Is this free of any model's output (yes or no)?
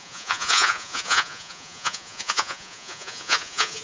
no